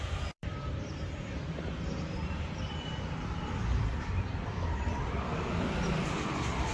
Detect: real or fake fake